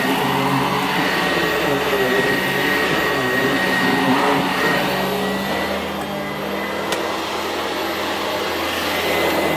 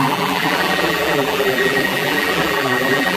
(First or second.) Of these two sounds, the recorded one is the first